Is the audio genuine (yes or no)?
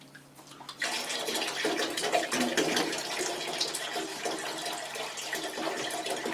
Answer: no